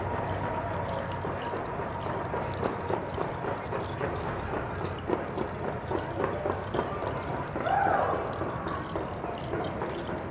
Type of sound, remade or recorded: recorded